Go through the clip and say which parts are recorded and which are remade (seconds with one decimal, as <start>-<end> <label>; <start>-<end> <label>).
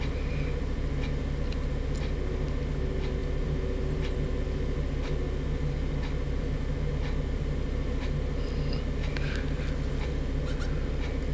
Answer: 0.0-11.3 recorded